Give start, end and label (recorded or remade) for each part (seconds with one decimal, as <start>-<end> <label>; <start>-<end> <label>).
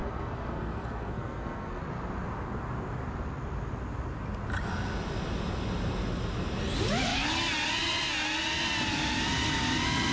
0.0-1.8 remade; 1.8-10.1 recorded